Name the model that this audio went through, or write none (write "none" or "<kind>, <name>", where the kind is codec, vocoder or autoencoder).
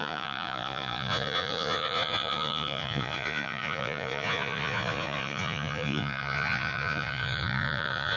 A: vocoder, Vocos